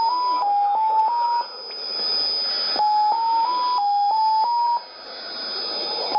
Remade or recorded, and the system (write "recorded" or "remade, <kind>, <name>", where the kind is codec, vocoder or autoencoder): recorded